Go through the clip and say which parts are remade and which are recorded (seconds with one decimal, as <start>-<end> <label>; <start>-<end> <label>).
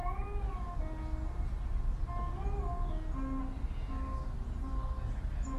0.0-5.6 recorded